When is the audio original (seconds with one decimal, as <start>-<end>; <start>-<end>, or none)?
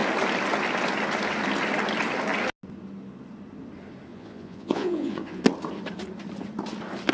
0.0-4.1; 5.4-7.1